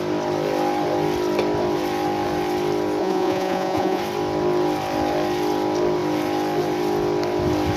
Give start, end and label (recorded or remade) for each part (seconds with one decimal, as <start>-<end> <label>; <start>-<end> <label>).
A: 0.0-3.0 recorded; 3.0-4.0 remade; 4.0-7.8 recorded